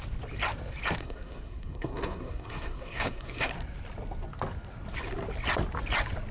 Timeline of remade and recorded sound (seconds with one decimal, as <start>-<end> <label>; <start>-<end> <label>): 0.0-1.0 recorded; 1.0-3.5 remade; 3.5-6.3 recorded